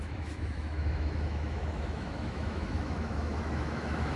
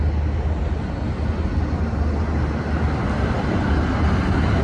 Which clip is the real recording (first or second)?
second